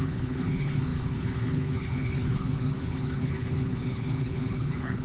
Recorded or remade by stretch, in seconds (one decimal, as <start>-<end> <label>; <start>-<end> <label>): 0.0-5.0 remade